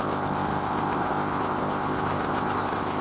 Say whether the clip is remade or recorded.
remade